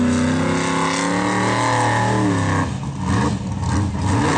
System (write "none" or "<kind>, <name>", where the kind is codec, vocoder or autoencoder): none